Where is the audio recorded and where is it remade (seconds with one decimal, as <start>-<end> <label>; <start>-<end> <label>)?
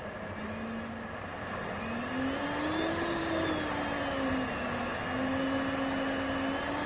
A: 0.0-6.9 recorded